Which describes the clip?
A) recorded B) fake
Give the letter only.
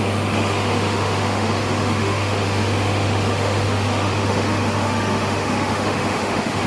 B